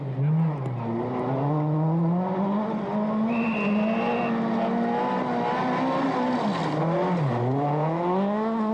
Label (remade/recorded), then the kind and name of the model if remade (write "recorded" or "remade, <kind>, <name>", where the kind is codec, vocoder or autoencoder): recorded